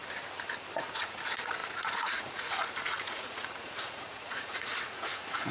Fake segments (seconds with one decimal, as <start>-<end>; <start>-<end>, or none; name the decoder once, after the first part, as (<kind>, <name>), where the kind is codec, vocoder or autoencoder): 0.7-5.5 (vocoder, Vocos)